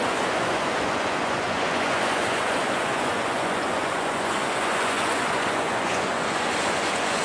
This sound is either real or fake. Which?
fake